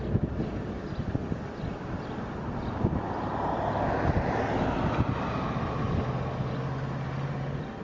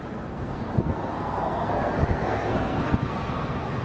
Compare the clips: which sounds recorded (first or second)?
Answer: first